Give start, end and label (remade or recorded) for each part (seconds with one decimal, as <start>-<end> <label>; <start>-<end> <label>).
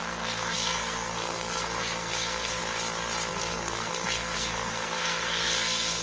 0.0-2.6 remade; 2.6-3.3 recorded; 3.3-6.0 remade